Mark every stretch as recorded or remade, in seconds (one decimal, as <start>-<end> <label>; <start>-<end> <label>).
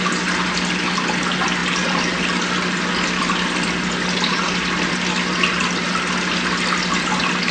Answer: 0.0-7.5 recorded